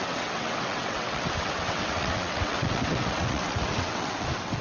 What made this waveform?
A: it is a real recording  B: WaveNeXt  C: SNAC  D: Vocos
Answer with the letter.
B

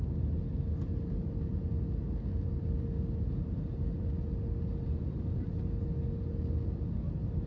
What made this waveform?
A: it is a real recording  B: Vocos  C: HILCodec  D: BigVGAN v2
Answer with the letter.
A